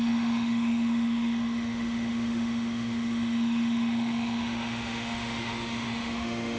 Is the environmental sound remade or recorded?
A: remade